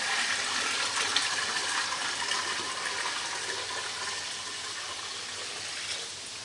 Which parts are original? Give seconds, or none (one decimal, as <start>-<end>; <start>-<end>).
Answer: 0.0-6.4